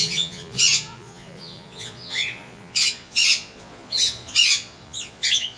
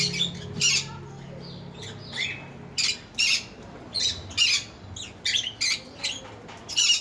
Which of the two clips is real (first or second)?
second